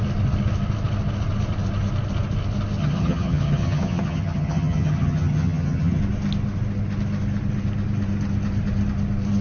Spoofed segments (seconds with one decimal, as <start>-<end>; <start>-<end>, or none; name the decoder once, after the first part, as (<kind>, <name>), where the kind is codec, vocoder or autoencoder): 2.8-6.0 (vocoder, HiFi-GAN)